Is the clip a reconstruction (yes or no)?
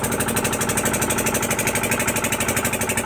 no